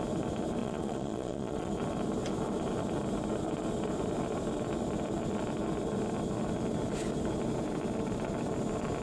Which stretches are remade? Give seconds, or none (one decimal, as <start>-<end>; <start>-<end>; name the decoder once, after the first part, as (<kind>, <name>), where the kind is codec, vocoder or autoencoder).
0.6-1.7 (vocoder, Vocos)